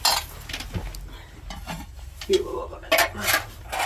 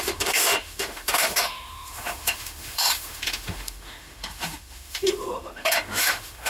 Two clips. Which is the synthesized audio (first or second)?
second